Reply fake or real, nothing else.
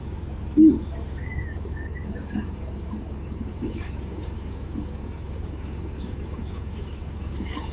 fake